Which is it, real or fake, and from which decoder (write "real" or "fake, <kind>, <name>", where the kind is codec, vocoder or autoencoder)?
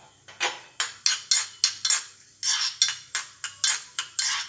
real